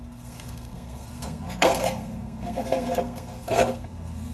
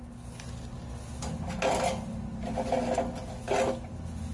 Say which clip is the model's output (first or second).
first